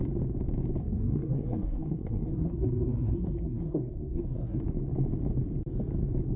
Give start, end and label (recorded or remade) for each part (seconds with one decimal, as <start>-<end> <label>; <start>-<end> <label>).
0.0-0.8 recorded; 0.8-4.6 remade; 4.6-6.4 recorded